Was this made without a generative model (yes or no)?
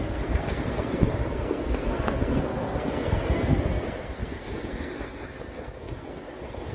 no